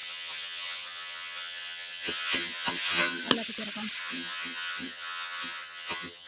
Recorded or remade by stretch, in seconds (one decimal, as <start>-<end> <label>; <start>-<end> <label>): 0.0-3.3 remade; 3.3-4.0 recorded; 4.0-6.3 remade